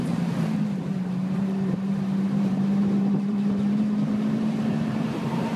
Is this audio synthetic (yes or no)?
yes